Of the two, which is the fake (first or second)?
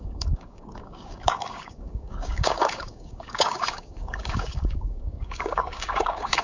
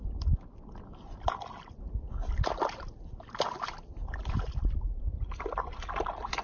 first